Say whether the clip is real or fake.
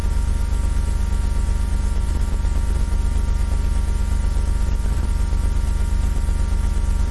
real